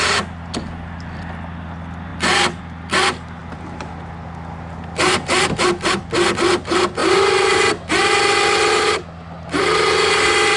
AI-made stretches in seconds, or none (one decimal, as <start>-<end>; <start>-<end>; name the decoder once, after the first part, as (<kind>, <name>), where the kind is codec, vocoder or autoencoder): 3.4-3.9 (vocoder, BigVGAN v2); 7.0-7.9